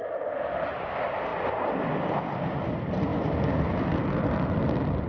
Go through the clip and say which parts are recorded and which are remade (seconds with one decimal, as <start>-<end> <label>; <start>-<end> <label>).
0.0-5.1 recorded